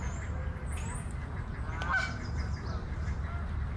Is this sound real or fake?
real